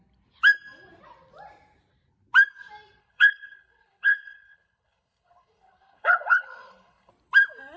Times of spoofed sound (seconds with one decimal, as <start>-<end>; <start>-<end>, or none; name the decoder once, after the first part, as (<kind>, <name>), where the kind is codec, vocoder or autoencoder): 3.0-7.1 (codec, HILCodec)